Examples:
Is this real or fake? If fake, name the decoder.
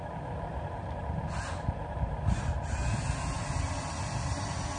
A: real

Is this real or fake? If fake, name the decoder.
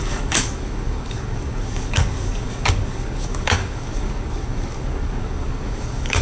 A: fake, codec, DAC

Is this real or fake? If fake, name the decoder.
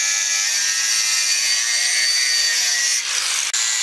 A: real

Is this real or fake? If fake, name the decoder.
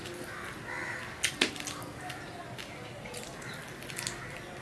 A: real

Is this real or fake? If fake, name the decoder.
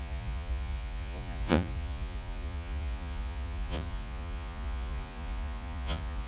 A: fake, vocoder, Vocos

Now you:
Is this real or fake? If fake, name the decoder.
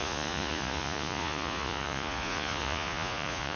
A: fake, vocoder, Vocos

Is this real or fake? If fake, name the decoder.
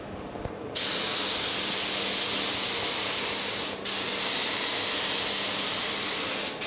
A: real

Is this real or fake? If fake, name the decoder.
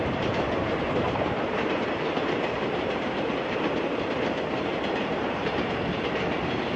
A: fake, vocoder, BigVGAN v2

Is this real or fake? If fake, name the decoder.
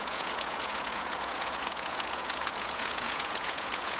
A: fake, vocoder, Vocos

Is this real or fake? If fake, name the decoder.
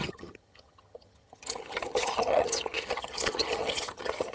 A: fake, vocoder, HiFi-GAN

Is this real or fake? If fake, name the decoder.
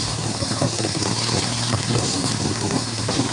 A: fake, codec, SNAC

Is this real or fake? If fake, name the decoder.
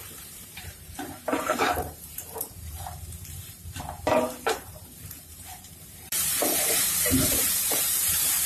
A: fake, vocoder, BigVGAN v2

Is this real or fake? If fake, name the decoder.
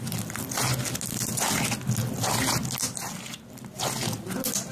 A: real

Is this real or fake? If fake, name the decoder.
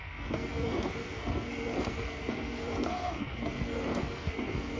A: fake, codec, SNAC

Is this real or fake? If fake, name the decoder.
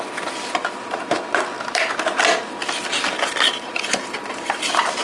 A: real